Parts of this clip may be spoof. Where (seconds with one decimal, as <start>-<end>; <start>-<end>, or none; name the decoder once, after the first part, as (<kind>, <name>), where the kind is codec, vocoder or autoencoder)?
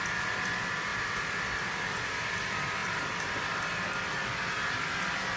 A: none